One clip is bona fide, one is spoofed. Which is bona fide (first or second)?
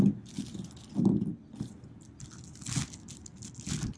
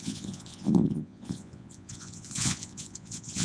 first